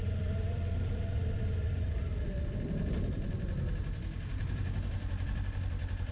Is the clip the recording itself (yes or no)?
yes